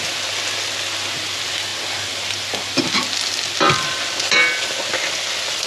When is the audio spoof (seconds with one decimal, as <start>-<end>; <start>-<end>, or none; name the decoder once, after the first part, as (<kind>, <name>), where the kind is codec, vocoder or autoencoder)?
none